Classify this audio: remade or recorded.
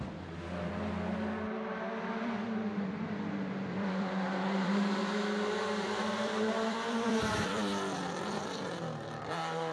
remade